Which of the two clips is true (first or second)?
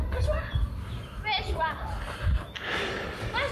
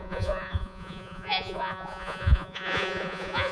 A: first